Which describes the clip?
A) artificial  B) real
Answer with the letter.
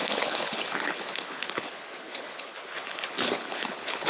A